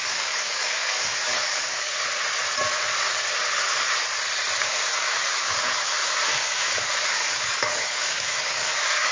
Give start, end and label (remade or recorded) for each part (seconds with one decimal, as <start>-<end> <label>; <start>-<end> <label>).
0.0-1.9 remade; 1.9-4.6 recorded; 4.6-9.1 remade